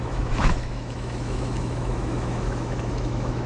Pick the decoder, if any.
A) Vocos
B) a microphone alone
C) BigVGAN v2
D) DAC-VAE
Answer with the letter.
D